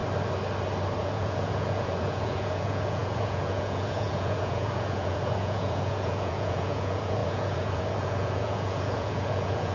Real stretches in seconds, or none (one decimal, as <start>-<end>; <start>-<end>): 0.0-1.0